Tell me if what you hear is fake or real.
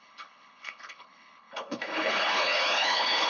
fake